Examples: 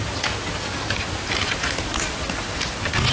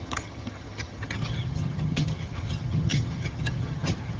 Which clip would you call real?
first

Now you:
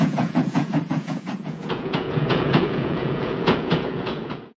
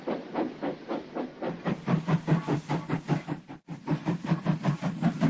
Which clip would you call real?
second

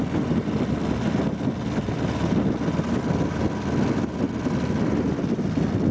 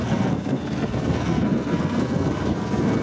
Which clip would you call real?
first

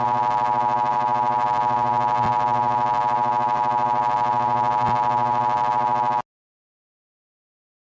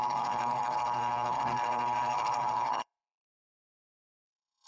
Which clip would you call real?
first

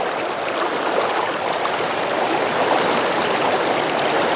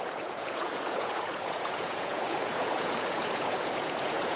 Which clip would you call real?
first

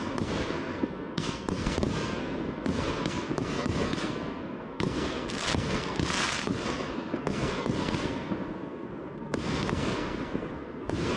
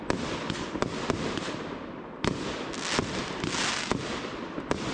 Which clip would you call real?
second